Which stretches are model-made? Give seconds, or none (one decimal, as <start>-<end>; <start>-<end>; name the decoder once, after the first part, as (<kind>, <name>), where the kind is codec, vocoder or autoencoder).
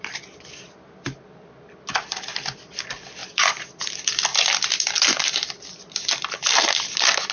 3.2-3.8 (vocoder, BigVGAN v2)